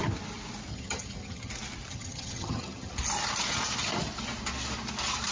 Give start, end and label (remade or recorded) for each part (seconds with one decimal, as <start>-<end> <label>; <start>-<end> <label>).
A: 0.0-0.7 recorded; 0.7-1.5 remade; 1.5-1.9 recorded; 1.9-2.9 remade; 2.9-5.3 recorded

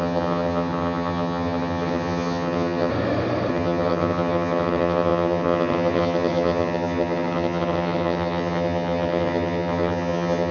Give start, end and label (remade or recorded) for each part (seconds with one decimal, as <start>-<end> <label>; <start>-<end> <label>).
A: 0.0-2.9 remade; 2.9-3.5 recorded; 3.5-10.5 remade

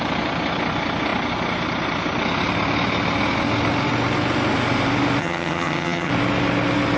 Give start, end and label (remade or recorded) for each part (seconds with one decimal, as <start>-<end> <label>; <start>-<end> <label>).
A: 0.0-5.2 recorded; 5.2-6.1 remade; 6.1-7.0 recorded

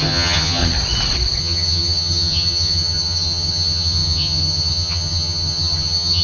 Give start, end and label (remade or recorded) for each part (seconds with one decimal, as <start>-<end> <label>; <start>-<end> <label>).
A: 0.0-0.6 remade; 0.6-1.4 recorded; 1.4-6.2 remade

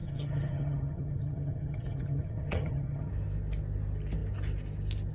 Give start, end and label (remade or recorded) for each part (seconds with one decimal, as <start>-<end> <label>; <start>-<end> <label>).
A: 0.0-3.1 remade; 3.1-5.1 recorded